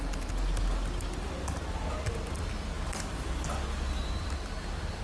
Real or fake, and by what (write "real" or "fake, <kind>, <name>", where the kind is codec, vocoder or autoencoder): real